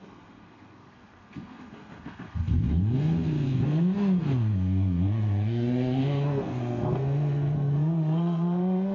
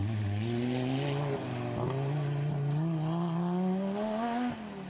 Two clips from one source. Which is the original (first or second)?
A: second